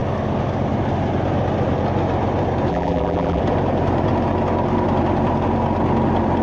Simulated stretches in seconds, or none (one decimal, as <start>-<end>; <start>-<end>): 2.7-3.4